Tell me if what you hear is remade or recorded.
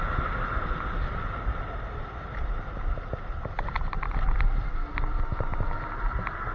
recorded